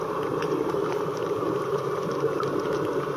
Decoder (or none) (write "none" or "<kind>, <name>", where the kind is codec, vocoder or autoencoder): vocoder, BigVGAN v2